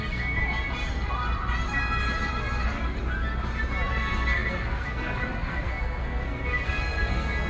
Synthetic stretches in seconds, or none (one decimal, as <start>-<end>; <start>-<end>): 0.0-0.4; 3.9-7.5